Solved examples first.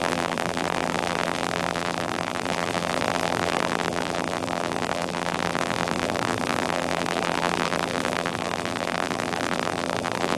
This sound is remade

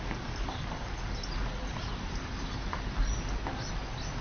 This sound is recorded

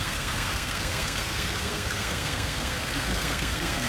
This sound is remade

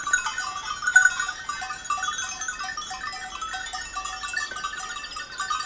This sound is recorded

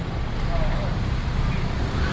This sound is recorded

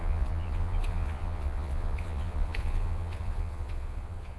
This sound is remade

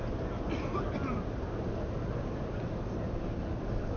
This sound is recorded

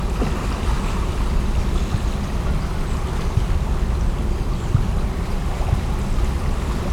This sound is recorded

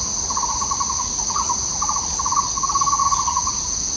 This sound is remade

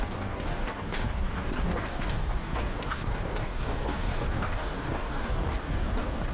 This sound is remade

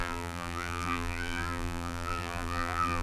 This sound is remade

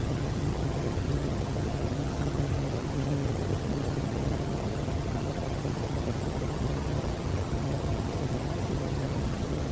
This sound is remade